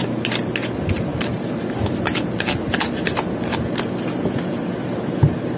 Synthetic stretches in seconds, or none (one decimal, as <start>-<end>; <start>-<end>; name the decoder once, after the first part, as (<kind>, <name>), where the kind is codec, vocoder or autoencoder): none